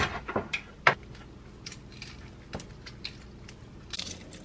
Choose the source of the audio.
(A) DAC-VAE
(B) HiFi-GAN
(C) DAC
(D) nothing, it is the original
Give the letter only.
D